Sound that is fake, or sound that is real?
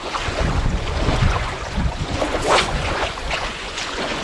fake